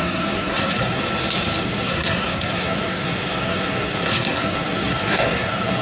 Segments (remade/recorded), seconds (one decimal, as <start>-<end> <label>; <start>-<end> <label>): 0.0-1.0 remade; 1.0-1.6 recorded; 1.6-5.8 remade